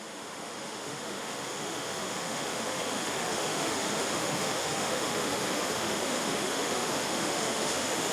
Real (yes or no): no